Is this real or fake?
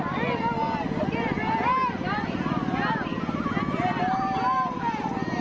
real